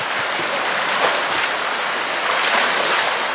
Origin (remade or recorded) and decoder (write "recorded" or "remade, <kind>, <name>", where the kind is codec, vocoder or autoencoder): recorded